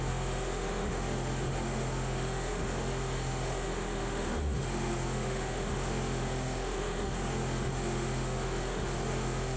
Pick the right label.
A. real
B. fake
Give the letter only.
B